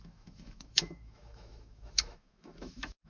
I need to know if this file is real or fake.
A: fake